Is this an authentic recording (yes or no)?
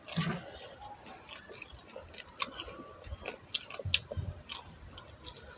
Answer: yes